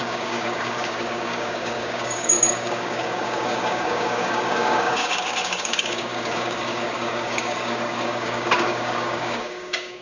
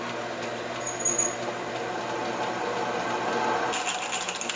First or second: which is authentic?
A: second